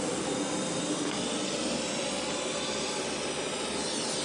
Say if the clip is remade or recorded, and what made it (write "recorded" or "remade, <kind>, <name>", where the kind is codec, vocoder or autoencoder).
recorded